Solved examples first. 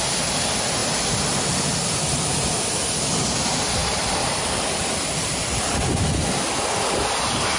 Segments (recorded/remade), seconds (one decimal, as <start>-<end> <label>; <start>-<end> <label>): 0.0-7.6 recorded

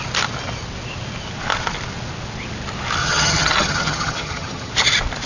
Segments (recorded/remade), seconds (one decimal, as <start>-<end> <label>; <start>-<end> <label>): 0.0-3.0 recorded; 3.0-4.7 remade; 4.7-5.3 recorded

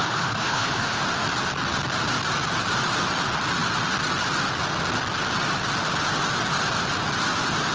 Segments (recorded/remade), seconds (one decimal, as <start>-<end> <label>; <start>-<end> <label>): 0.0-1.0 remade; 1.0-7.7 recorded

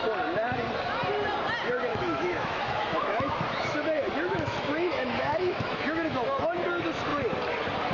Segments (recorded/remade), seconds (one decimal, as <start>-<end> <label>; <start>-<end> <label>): 0.0-1.9 recorded; 1.9-6.4 remade; 6.4-7.9 recorded

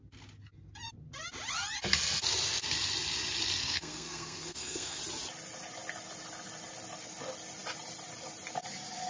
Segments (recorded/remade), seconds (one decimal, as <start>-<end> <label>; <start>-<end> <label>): 0.0-3.6 recorded; 3.6-5.0 remade; 5.0-9.1 recorded